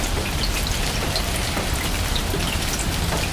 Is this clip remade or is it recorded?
recorded